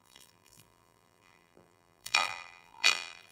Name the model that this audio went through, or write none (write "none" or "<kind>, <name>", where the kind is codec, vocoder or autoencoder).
vocoder, BigVGAN v2